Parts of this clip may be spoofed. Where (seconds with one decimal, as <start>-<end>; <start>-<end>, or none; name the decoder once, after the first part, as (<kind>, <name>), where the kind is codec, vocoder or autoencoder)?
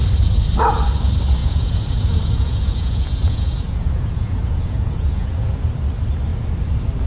1.4-5.7 (vocoder, Vocos)